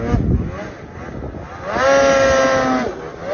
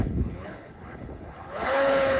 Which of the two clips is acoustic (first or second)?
first